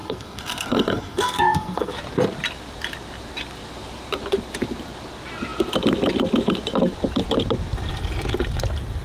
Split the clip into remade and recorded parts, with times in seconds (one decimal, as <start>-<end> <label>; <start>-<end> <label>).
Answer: 0.0-1.9 remade; 1.9-9.0 recorded